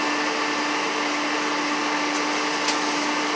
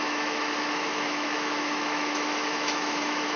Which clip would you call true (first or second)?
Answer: first